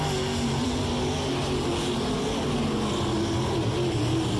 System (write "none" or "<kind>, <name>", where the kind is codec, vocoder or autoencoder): none